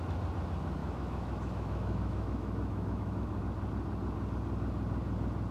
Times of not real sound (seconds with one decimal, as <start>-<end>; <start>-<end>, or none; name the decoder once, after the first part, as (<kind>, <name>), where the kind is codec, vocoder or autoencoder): 0.8-3.4 (autoencoder, DAC-VAE)

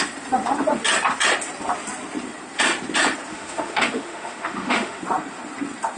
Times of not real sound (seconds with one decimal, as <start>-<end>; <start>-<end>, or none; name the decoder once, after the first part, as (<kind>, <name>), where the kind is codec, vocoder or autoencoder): 3.3-5.0 (autoencoder, DAC-VAE)

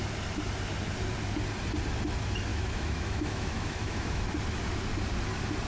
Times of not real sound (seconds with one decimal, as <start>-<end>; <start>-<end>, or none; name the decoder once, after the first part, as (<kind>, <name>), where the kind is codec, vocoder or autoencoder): 2.5-4.2 (autoencoder, DAC-VAE)

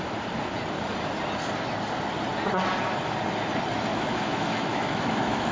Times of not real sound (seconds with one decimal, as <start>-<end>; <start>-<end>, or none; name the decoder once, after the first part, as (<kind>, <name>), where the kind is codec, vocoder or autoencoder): 3.9-5.5 (autoencoder, DAC-VAE)